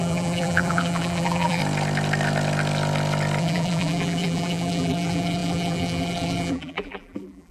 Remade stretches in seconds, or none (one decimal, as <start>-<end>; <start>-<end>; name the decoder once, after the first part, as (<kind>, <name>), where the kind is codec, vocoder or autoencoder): 0.0-1.6 (vocoder, BigVGAN v2); 3.4-7.5